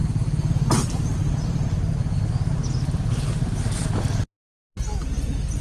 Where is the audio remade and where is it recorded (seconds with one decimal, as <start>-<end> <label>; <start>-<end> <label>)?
0.0-5.6 recorded